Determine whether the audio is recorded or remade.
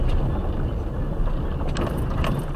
recorded